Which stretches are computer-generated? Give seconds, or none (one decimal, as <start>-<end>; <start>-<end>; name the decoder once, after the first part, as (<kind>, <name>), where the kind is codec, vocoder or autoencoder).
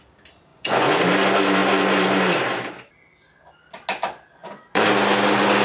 0.5-1.1 (vocoder, Vocos); 4.4-4.9